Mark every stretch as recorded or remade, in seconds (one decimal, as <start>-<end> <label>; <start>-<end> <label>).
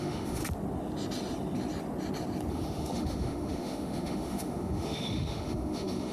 0.0-0.4 remade; 0.4-2.5 recorded; 2.5-6.1 remade